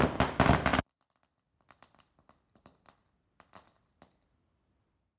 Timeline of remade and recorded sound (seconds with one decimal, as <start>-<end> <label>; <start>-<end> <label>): 0.0-5.2 remade